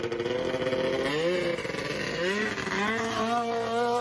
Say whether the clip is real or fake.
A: real